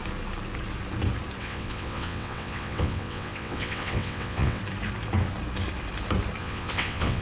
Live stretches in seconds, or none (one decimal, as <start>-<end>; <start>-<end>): 0.0-1.4; 4.6-6.4